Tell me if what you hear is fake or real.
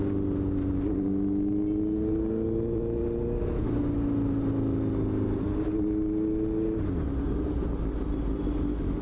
real